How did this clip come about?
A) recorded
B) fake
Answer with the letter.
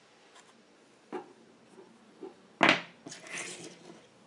A